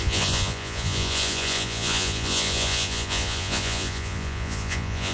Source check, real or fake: fake